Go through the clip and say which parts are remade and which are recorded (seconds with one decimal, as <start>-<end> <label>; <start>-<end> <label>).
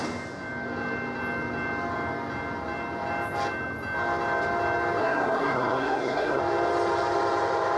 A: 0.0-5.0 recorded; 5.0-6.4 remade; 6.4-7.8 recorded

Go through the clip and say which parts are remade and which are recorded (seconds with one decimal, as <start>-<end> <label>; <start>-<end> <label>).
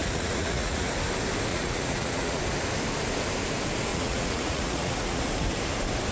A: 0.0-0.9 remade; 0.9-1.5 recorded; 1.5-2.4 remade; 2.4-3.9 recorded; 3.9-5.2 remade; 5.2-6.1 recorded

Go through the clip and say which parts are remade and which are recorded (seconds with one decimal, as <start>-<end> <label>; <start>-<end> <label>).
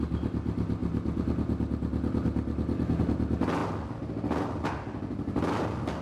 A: 0.0-6.0 recorded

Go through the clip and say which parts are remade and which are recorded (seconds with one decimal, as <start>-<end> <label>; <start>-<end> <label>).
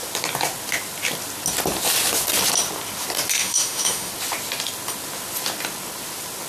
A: 0.0-3.4 recorded; 3.4-4.1 remade; 4.1-6.5 recorded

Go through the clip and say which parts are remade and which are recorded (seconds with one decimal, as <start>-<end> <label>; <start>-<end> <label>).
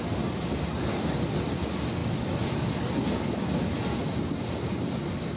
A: 0.0-5.4 recorded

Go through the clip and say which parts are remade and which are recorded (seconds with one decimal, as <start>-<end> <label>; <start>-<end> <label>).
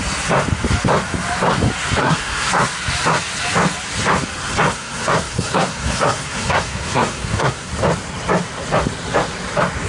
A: 0.0-2.0 recorded; 2.0-2.5 remade; 2.5-4.7 recorded; 4.7-7.7 remade; 7.7-9.9 recorded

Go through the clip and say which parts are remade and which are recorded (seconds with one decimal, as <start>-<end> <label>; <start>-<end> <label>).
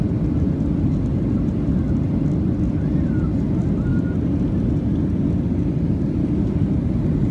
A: 0.0-3.9 recorded; 3.9-4.5 remade; 4.5-7.3 recorded